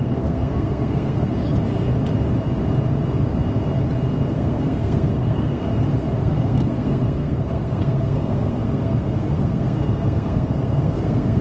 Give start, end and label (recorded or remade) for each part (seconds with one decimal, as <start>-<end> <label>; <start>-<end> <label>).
0.0-1.4 remade; 1.4-4.3 recorded; 4.3-5.6 remade; 5.6-6.2 recorded; 6.2-11.4 remade